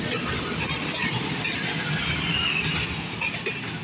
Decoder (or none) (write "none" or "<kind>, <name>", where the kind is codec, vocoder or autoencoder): none